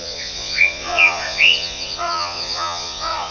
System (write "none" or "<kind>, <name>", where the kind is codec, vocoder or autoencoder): vocoder, Vocos